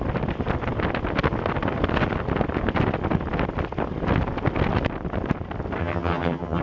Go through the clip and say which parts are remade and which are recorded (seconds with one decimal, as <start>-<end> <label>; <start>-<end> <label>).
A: 0.0-5.8 recorded; 5.8-6.6 remade